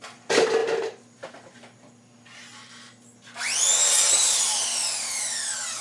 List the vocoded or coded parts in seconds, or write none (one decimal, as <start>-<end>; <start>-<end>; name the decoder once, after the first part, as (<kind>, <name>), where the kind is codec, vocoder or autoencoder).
none